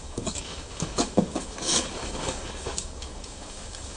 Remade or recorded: remade